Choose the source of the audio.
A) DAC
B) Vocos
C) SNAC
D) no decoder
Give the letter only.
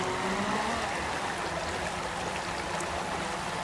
D